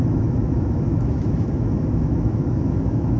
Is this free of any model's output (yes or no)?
no